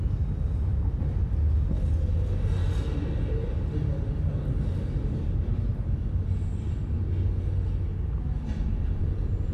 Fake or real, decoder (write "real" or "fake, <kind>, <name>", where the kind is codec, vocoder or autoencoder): real